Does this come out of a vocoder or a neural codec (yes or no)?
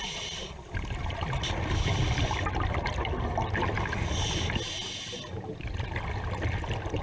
no